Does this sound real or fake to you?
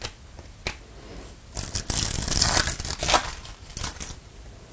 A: real